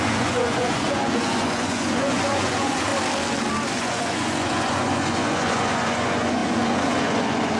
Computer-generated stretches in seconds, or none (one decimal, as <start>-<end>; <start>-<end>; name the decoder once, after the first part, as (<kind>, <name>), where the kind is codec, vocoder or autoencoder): 0.0-2.9 (vocoder, Vocos); 3.7-7.6